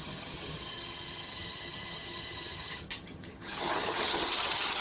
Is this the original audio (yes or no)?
no